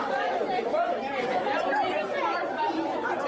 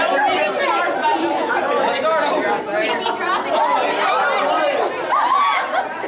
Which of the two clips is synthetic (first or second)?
first